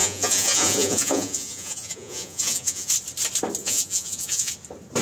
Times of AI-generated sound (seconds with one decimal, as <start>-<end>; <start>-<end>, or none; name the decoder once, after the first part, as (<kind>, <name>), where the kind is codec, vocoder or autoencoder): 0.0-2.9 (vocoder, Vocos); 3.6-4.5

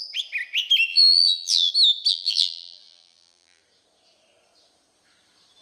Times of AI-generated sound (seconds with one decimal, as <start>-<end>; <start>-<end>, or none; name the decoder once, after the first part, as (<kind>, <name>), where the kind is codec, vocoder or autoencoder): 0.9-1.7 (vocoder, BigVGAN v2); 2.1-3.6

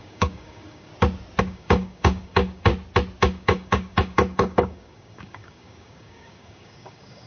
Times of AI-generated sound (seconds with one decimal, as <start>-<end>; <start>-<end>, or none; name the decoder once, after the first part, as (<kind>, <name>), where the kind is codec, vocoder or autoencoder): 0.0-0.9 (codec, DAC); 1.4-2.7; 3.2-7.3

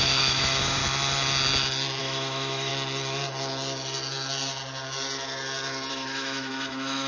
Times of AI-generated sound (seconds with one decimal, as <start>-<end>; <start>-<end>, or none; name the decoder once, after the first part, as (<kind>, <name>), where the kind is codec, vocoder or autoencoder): 0.0-0.8 (autoencoder, DAC-VAE); 2.0-2.7; 5.9-7.1

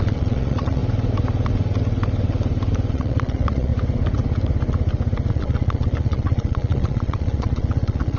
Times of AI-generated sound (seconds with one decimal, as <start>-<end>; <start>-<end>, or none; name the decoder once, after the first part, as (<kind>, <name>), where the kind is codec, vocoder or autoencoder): 0.0-0.8 (vocoder, Vocos); 2.9-3.7; 5.3-8.2

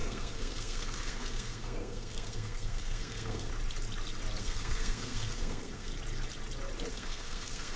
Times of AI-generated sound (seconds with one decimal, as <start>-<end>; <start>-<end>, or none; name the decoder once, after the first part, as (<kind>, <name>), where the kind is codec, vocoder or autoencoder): 0.0-3.5 (codec, SNAC); 4.4-5.9; 6.9-7.8

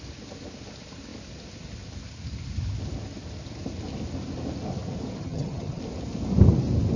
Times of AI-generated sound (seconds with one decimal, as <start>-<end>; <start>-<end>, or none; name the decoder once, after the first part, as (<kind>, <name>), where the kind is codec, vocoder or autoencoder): 5.2-5.8 (vocoder, HiFi-GAN)